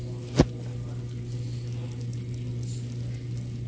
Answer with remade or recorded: recorded